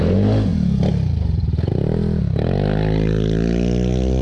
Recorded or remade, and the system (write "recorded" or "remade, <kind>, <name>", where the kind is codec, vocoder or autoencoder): recorded